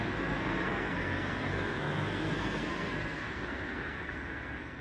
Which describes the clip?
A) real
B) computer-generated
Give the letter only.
B